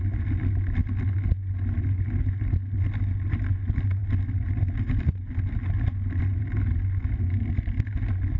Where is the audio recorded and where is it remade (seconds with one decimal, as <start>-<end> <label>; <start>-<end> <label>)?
0.0-8.4 recorded